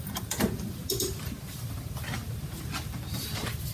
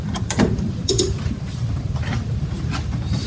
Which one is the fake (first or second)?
second